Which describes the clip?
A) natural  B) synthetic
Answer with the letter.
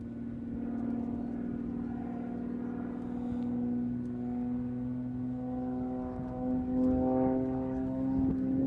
A